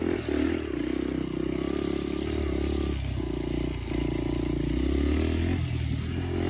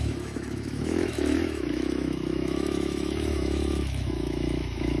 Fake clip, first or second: second